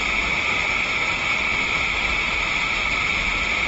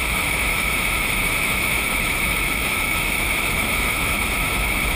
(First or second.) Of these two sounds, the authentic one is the first